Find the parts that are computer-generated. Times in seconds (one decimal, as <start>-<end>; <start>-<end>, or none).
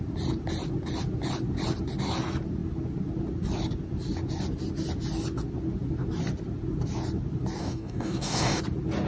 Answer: 7.6-8.6